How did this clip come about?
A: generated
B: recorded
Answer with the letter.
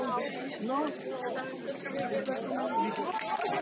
B